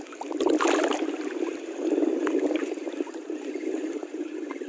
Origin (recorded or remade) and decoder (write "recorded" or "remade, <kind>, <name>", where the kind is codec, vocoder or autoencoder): recorded